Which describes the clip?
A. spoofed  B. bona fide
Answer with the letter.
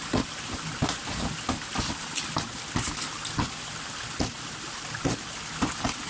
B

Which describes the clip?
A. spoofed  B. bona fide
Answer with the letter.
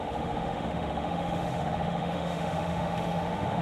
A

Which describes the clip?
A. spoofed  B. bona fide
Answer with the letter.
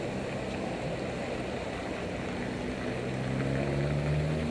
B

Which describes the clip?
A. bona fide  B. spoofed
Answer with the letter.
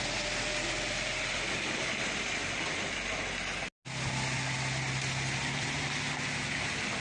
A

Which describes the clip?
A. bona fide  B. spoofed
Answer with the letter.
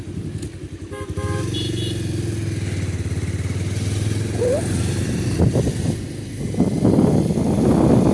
A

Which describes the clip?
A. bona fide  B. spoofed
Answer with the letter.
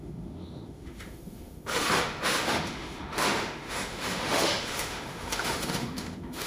B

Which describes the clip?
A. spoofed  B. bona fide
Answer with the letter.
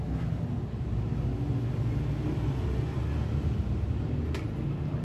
B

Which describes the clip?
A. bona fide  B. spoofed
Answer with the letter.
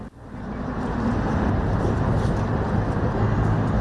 A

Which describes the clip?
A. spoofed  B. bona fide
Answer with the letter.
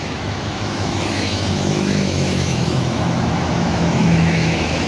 A